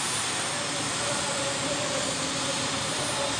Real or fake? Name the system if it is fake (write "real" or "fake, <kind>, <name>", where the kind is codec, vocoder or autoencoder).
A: real